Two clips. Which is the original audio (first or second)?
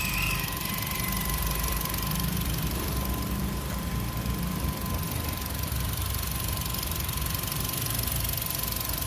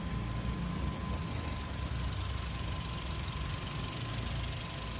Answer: second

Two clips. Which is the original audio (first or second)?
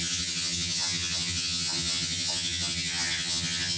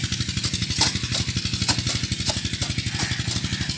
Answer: second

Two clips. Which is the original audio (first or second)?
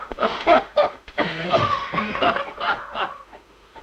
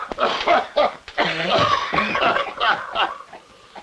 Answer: second